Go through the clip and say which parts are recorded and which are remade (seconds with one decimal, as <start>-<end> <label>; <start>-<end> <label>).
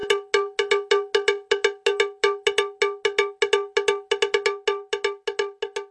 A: 0.0-5.9 recorded